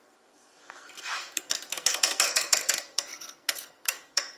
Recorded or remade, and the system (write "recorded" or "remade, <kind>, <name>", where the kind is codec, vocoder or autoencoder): remade, codec, SNAC